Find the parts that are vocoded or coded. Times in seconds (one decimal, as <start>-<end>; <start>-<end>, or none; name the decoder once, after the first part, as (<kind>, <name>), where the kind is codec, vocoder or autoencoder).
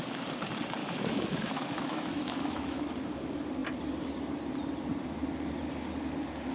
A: 0.8-2.9 (autoencoder, DAC-VAE)